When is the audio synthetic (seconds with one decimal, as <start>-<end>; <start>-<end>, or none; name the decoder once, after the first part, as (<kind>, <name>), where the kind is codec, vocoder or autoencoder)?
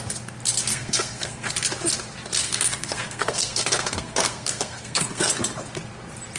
0.7-1.5 (codec, SNAC); 2.4-5.3